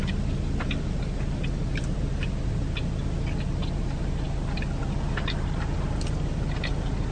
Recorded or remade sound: recorded